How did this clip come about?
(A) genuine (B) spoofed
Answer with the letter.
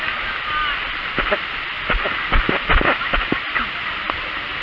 A